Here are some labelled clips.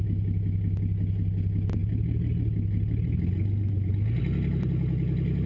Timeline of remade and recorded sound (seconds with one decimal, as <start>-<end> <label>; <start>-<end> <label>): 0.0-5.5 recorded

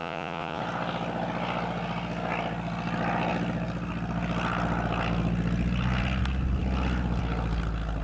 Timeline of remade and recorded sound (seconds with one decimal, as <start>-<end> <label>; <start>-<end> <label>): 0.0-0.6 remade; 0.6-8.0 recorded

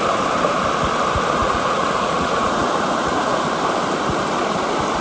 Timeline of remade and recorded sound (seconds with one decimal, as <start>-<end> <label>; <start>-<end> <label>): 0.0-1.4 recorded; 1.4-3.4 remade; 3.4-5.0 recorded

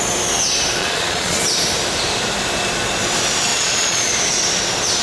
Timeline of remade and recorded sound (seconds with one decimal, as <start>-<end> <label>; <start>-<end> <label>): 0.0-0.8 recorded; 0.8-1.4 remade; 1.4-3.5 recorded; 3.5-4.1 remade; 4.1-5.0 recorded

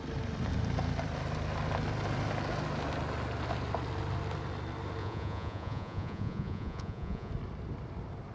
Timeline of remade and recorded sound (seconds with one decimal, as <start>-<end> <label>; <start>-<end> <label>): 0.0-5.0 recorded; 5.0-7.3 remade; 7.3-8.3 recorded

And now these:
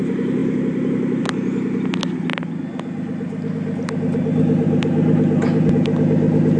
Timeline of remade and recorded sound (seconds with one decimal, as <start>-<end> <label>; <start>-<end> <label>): 0.0-6.6 recorded

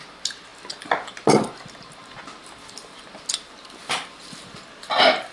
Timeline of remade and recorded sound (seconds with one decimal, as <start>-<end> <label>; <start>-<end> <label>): 0.0-5.3 recorded